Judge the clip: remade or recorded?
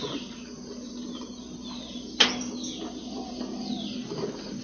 recorded